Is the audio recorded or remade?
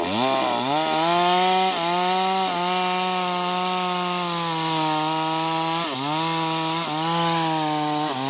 recorded